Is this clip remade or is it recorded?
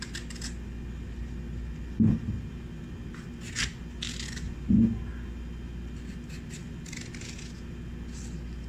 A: recorded